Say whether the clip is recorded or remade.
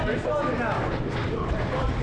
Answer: recorded